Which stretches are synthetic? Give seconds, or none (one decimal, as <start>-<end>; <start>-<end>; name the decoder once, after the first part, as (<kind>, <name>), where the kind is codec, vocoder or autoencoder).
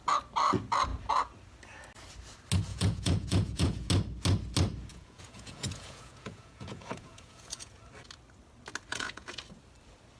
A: 2.7-3.9 (vocoder, Vocos); 4.9-7.8; 8.9-9.4